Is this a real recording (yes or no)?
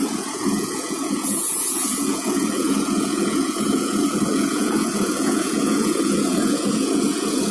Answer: no